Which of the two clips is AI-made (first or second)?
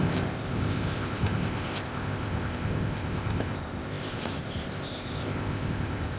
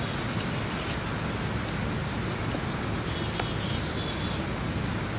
first